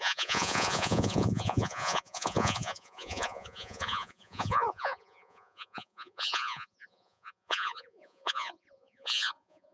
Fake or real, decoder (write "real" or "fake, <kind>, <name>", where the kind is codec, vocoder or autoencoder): fake, vocoder, Vocos